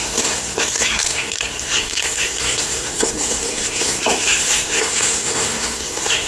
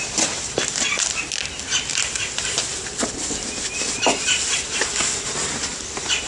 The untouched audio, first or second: second